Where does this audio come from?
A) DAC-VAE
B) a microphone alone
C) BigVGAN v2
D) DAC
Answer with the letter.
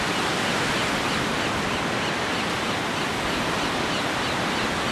B